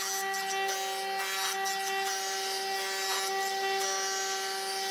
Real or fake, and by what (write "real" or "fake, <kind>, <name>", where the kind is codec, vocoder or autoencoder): real